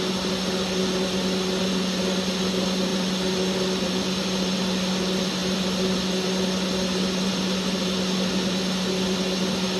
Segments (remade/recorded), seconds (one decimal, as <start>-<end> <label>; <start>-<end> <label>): 0.0-9.8 recorded